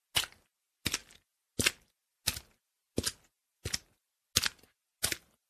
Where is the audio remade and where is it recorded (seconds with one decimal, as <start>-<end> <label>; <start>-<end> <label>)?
0.0-5.5 recorded